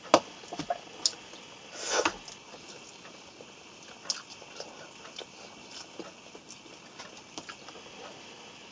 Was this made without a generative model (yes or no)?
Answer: yes